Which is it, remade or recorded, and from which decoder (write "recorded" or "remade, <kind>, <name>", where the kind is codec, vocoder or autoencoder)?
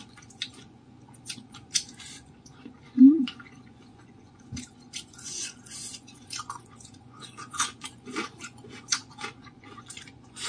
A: remade, vocoder, Vocos